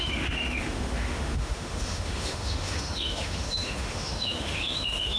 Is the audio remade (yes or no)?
yes